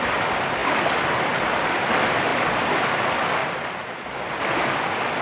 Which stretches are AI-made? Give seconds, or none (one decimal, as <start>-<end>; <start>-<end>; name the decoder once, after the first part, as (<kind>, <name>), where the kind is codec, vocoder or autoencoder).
none